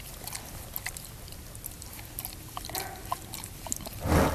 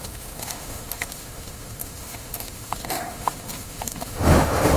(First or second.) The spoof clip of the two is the second